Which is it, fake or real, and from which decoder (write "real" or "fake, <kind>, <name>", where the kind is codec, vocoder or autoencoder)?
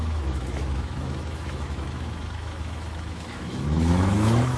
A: fake, autoencoder, DAC-VAE